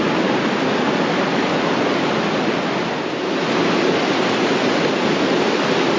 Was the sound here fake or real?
real